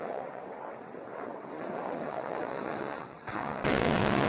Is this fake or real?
fake